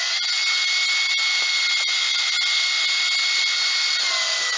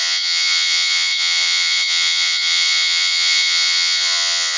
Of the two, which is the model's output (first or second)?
second